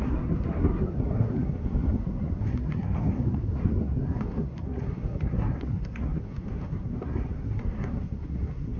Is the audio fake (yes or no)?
yes